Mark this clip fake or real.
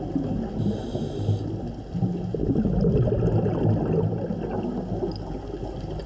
real